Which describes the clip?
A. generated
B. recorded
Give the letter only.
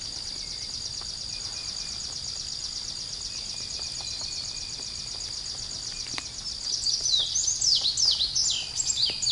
B